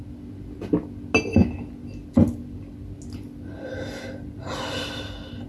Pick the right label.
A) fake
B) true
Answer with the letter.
B